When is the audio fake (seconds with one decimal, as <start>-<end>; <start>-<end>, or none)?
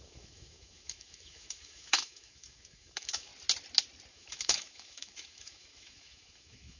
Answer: 0.0-3.3; 4.1-6.8